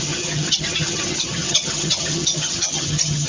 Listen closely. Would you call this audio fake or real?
fake